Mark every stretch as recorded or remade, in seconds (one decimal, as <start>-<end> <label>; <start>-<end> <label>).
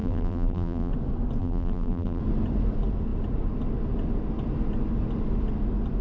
0.0-0.9 remade; 0.9-1.4 recorded; 1.4-2.2 remade; 2.2-6.0 recorded